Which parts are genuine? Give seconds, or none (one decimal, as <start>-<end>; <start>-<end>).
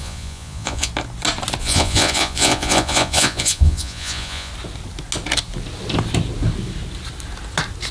0.9-1.6; 4.5-7.9